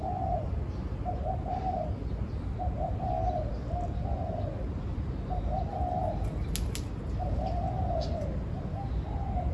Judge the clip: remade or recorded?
recorded